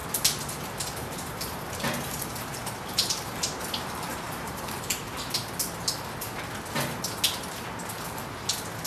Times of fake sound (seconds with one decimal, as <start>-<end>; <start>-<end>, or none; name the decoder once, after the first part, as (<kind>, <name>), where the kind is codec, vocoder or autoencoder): 1.0-4.9 (vocoder, BigVGAN v2)